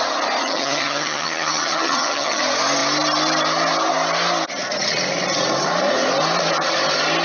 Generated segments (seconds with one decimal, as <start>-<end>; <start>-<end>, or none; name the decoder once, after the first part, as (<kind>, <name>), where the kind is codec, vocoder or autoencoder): 0.4-2.4 (vocoder, HiFi-GAN)